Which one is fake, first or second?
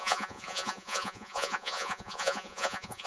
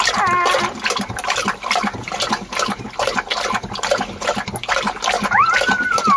first